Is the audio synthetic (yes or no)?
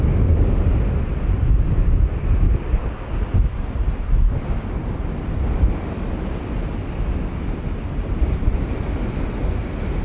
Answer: no